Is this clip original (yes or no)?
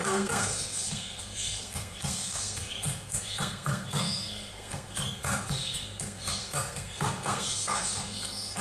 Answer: no